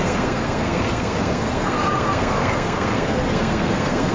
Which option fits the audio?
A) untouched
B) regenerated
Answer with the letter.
B